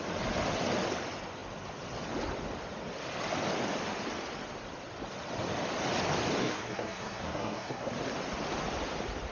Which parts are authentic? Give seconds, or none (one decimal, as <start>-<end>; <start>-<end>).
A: 0.0-6.4; 7.9-9.3